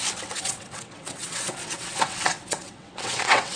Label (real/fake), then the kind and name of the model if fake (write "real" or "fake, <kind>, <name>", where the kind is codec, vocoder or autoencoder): fake, vocoder, WaveNeXt